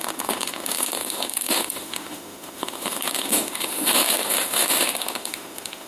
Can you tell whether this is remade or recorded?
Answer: remade